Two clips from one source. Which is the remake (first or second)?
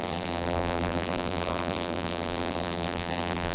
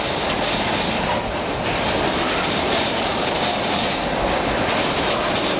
first